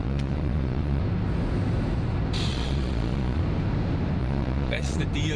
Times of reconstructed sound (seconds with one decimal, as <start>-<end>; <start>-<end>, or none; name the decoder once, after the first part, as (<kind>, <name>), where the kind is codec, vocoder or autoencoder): 0.0-1.0 (vocoder, Vocos); 2.5-3.4; 4.2-5.0